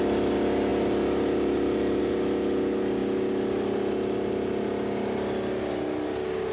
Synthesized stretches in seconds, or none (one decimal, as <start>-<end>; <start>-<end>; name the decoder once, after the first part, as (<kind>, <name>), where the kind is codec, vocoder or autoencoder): none